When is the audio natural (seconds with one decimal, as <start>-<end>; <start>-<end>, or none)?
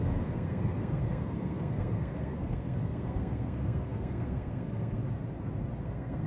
5.0-5.8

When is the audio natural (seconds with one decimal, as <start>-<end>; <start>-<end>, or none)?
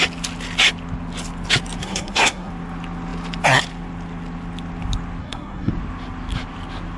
0.0-1.8; 2.5-5.2; 5.7-7.0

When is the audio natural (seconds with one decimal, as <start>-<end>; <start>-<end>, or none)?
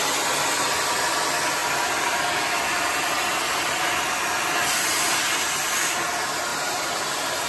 0.0-6.5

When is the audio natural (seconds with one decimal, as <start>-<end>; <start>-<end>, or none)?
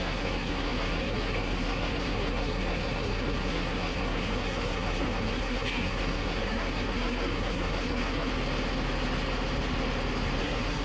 8.3-10.4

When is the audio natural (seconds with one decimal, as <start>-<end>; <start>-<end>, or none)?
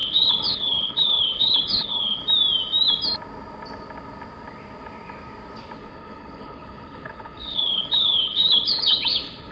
2.2-5.8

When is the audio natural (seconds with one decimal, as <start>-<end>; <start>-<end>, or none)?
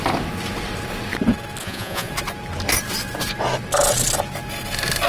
0.0-1.6; 2.1-5.1